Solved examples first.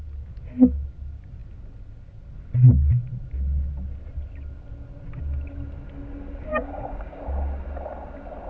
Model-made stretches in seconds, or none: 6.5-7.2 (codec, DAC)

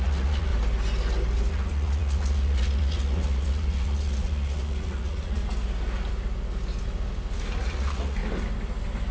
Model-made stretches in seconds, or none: 0.0-0.5 (vocoder, Vocos); 1.5-5.4; 7.6-8.2

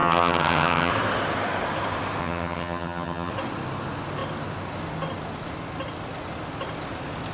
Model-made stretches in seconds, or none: 0.0-0.9 (vocoder, HiFi-GAN); 2.2-3.3

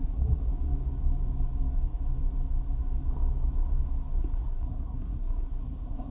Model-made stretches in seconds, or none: 0.0-0.5 (codec, SNAC); 4.2-6.1